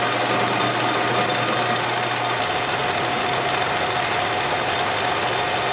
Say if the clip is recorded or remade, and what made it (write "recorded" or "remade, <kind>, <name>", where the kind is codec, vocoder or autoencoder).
recorded